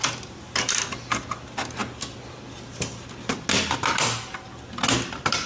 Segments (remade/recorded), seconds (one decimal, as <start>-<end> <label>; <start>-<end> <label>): 0.0-5.5 recorded